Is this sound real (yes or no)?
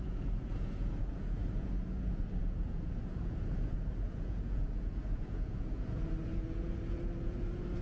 no